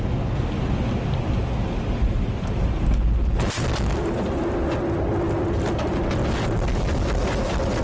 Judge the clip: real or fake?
real